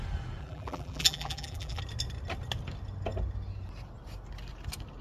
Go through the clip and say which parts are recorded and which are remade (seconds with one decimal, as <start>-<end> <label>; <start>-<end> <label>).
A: 0.0-0.4 recorded; 0.4-1.8 remade; 1.8-5.0 recorded